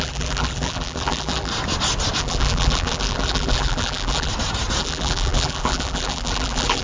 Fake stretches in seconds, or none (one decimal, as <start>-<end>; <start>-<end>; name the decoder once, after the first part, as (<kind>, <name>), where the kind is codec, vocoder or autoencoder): 0.0-1.5 (vocoder, BigVGAN v2); 2.2-4.3; 4.8-6.8